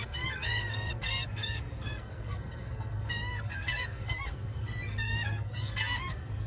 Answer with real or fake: fake